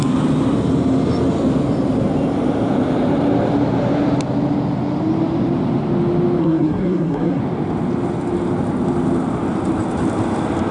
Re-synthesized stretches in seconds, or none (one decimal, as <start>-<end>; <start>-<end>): 6.4-7.4